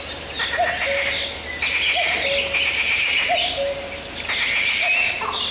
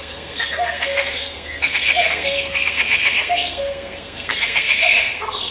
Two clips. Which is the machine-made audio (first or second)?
second